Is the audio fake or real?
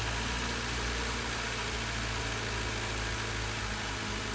real